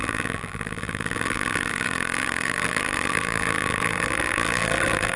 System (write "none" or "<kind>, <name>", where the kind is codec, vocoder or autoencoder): vocoder, BigVGAN v2